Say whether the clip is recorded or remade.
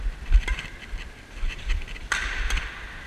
recorded